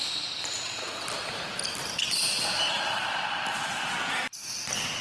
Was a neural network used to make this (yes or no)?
no